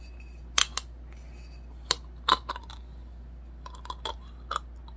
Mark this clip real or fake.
real